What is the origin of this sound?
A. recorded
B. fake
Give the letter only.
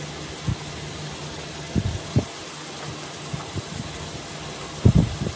A